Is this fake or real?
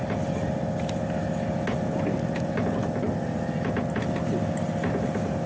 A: real